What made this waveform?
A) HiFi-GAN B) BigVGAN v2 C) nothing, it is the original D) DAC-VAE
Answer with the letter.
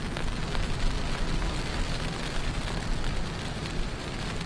C